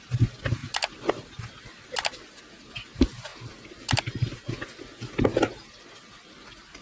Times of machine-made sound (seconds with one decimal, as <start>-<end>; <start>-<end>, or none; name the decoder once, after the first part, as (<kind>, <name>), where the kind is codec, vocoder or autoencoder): none